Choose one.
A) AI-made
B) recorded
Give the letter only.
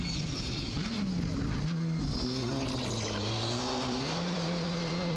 B